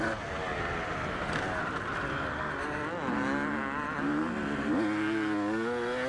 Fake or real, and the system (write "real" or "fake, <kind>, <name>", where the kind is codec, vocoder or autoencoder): real